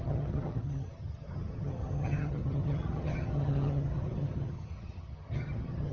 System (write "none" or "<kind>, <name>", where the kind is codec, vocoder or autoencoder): vocoder, HiFi-GAN